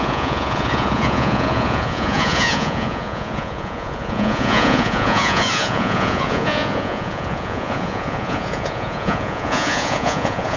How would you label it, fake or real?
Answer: fake